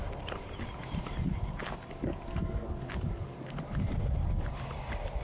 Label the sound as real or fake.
fake